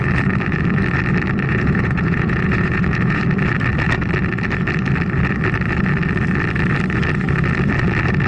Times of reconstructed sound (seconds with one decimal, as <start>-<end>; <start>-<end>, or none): 1.5-3.2